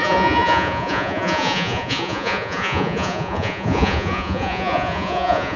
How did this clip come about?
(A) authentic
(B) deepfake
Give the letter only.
B